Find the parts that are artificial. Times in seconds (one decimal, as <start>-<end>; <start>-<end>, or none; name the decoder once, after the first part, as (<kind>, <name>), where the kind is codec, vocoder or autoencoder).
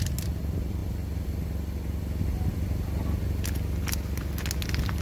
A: none